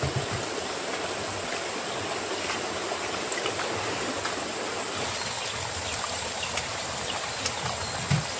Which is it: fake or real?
real